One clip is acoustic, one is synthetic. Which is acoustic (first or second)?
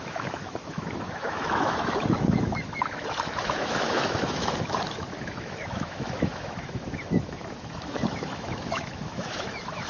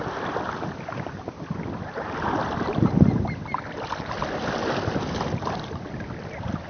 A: second